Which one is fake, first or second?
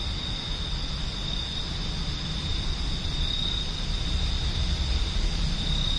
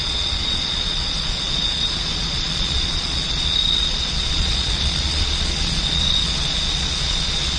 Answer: second